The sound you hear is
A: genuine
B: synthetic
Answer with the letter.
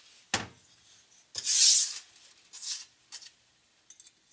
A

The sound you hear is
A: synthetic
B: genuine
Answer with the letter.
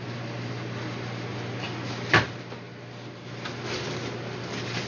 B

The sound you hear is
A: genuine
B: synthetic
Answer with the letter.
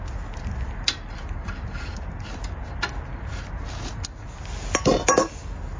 A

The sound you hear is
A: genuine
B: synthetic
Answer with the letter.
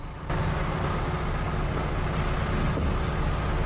A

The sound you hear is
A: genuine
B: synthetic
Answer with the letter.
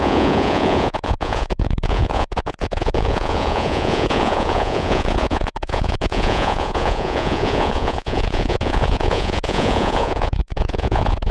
B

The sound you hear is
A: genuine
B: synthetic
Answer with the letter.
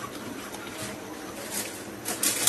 A